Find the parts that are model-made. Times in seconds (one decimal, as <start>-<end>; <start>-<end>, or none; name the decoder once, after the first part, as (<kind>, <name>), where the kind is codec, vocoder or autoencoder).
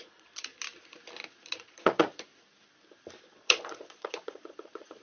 0.0-0.5 (vocoder, Vocos); 1.5-2.1; 3.3-5.0